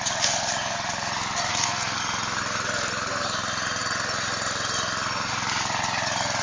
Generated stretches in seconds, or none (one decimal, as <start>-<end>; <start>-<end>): 1.5-2.0